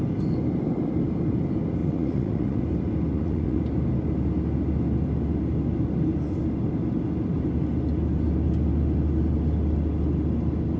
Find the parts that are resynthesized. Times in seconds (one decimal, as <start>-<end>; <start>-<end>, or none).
1.8-2.6; 3.1-3.6